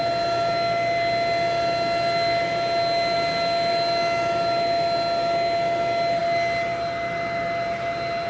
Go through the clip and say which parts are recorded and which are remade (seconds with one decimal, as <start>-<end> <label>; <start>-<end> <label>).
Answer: 0.0-8.3 recorded